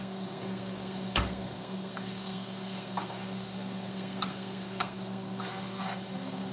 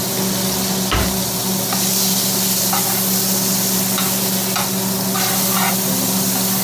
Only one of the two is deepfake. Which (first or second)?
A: first